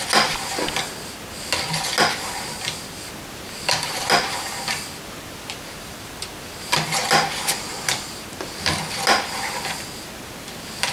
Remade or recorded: recorded